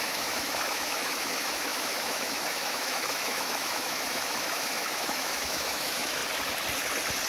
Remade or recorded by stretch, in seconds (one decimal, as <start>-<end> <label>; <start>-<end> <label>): 0.0-6.2 remade; 6.2-7.3 recorded